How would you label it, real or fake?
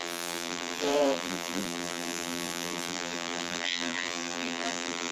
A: fake